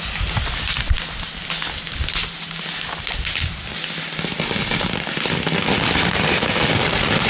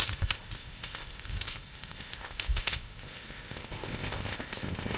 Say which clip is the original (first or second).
first